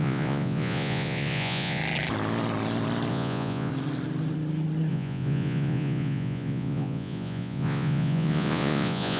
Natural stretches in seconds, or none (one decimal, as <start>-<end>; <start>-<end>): 1.8-3.1; 3.7-4.9